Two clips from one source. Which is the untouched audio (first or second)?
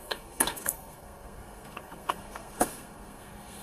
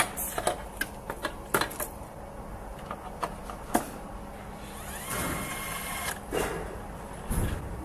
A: second